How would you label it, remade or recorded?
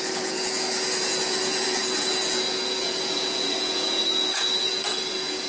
remade